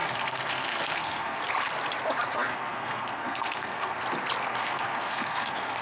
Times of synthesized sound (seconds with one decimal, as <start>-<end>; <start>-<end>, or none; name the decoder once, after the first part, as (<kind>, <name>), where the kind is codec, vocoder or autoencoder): 0.0-1.4 (codec, SNAC); 2.5-4.0; 4.5-5.8